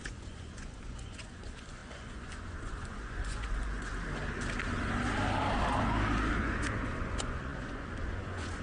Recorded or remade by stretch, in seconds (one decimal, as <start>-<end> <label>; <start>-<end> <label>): 0.0-3.9 remade; 3.9-6.4 recorded; 6.4-8.6 remade